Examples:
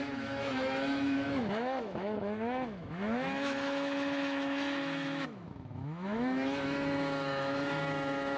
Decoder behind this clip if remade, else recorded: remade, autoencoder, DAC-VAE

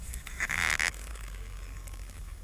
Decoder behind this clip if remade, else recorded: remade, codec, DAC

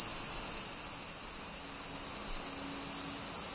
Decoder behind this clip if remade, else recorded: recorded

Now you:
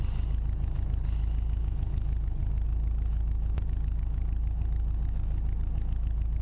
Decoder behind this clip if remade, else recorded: recorded